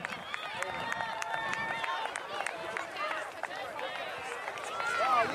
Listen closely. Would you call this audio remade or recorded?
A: recorded